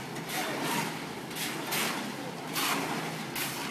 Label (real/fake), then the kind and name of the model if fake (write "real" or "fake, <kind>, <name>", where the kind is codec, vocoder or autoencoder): real